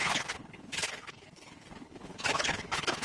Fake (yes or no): yes